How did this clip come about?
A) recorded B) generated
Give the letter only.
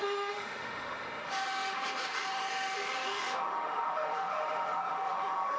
B